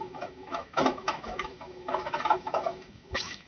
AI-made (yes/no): yes